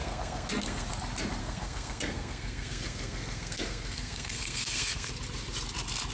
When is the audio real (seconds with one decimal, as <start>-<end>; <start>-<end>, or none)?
0.9-1.4; 5.1-6.1